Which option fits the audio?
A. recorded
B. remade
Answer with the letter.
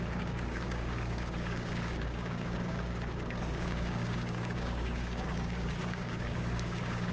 B